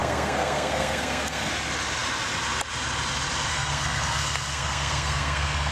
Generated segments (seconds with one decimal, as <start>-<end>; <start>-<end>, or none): 0.0-1.5; 3.5-5.7